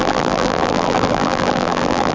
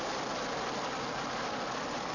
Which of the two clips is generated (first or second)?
first